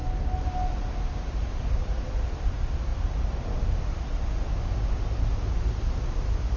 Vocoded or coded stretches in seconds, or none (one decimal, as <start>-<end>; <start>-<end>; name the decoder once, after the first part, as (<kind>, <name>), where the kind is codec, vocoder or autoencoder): none